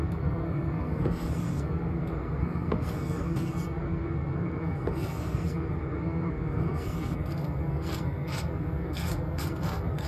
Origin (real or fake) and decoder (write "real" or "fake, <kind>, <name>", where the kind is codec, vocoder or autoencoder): fake, codec, SNAC